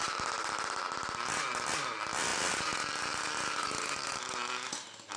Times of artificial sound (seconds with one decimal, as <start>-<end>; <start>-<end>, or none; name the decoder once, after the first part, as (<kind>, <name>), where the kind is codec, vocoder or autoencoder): none